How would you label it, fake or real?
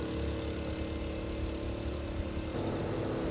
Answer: real